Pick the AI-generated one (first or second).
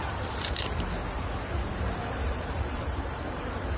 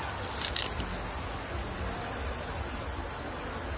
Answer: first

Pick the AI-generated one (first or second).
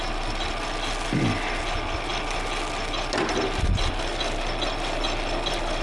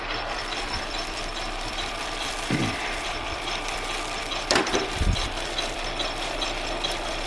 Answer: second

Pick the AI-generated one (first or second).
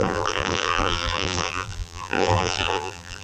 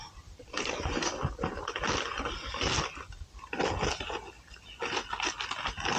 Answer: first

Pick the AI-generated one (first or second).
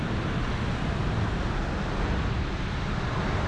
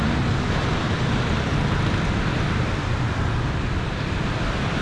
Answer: second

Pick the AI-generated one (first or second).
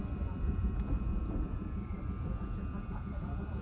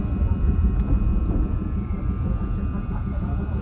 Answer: first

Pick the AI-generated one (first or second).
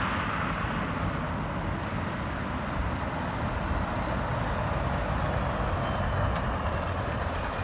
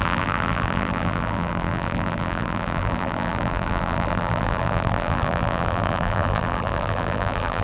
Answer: second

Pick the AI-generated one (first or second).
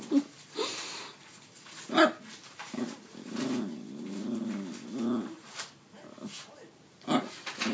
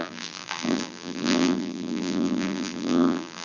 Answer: second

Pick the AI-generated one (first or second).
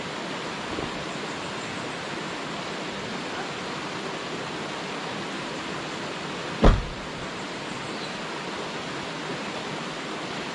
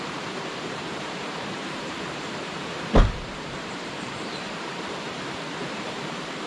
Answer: second